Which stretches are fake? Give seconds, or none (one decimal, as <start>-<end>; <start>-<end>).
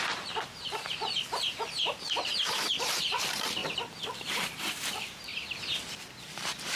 0.0-3.6; 4.3-5.3; 6.2-6.8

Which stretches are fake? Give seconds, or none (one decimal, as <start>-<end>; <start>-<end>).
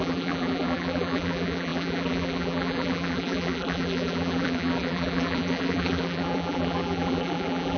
0.0-7.8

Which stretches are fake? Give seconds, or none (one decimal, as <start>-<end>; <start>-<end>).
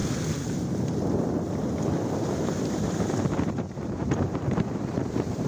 3.3-5.5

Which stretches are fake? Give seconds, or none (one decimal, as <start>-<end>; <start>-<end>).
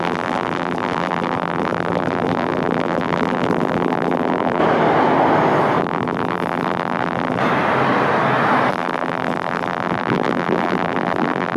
0.0-4.6; 5.8-7.4; 8.7-11.6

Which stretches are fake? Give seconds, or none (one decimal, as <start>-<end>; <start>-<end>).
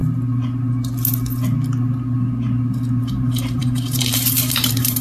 3.0-5.0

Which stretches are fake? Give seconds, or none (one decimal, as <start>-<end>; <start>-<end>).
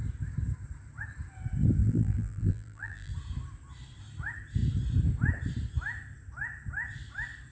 1.8-3.1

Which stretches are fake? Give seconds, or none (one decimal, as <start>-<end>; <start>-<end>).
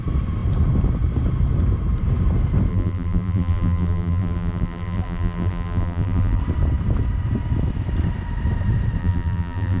2.7-6.4; 9.0-9.8